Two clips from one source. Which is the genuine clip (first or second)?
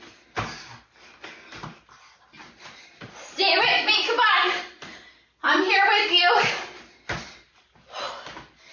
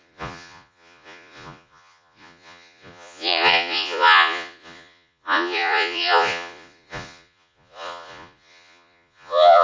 first